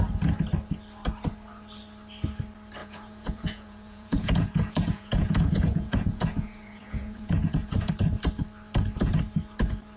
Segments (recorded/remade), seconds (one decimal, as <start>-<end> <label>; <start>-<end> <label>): 0.0-2.8 recorded; 2.8-7.9 remade; 7.9-10.0 recorded